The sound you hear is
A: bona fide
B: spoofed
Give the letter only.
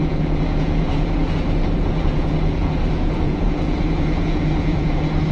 B